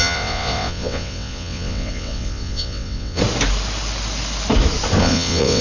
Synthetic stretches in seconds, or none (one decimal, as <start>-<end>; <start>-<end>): 0.0-3.2; 5.0-5.6